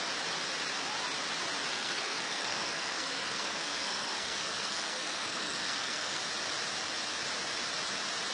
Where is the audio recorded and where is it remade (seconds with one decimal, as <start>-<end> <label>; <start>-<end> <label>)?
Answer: 0.0-1.7 recorded; 1.7-6.2 remade; 6.2-8.3 recorded